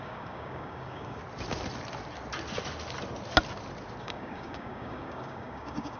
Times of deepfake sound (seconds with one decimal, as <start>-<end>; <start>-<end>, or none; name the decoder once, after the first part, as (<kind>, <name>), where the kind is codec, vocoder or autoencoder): 0.0-1.2 (codec, DAC); 4.0-6.0